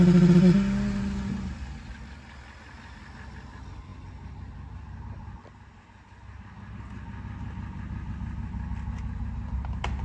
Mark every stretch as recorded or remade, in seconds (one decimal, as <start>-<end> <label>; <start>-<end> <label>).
0.0-10.0 recorded